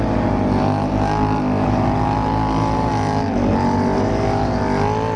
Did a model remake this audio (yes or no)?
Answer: no